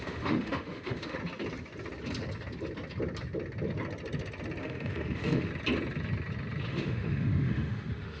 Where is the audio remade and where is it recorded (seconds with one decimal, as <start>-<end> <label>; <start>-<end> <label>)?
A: 0.0-1.2 remade; 1.2-4.6 recorded; 4.6-5.5 remade; 5.5-6.7 recorded; 6.7-8.2 remade